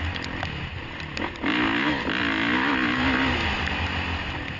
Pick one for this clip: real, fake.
real